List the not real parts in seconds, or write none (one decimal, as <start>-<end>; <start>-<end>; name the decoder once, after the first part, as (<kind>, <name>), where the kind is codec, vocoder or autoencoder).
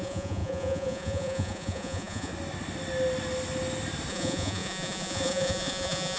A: 0.0-2.3 (vocoder, Vocos); 4.1-6.2